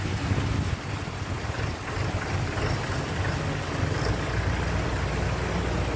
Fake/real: real